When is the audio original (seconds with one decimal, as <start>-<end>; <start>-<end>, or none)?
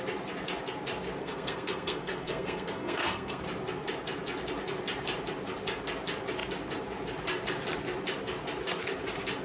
0.0-1.2; 3.4-9.4